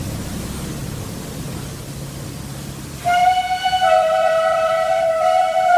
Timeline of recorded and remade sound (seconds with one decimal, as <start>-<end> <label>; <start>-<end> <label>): 0.0-0.8 remade; 0.8-2.6 recorded; 2.6-5.8 remade